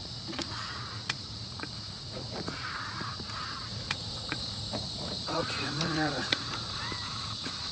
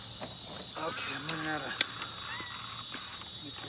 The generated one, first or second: first